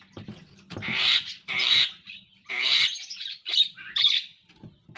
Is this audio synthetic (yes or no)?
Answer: yes